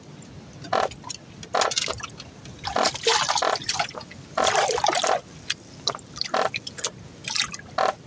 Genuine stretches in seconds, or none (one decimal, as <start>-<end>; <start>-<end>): 0.0-8.1